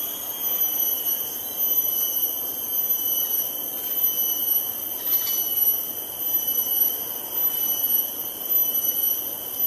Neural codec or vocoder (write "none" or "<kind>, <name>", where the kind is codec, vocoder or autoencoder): none